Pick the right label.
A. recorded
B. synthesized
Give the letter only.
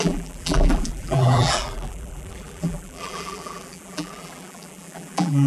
B